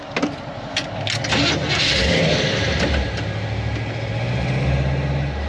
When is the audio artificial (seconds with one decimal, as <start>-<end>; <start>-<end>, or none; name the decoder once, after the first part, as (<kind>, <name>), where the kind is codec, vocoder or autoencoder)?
none